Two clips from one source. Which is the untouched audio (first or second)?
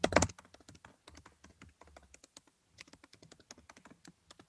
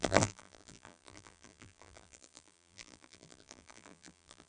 first